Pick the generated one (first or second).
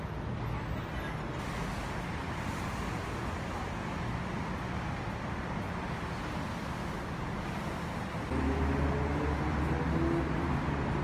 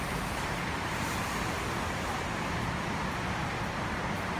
second